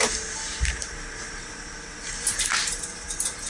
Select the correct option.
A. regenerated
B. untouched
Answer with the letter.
B